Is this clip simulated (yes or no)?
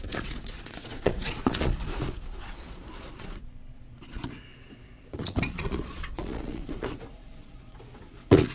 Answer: yes